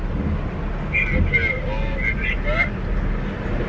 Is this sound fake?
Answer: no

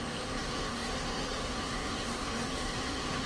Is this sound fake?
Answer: yes